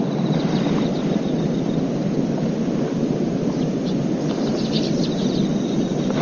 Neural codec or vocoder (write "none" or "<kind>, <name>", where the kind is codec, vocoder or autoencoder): none